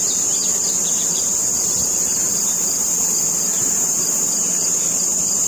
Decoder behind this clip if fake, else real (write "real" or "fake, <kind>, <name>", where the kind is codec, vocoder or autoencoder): fake, vocoder, BigVGAN v2